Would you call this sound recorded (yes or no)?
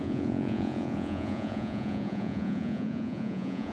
no